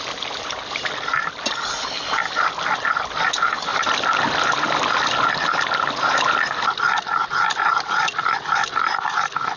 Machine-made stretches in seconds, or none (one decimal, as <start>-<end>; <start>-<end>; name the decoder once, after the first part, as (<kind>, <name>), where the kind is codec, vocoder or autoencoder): none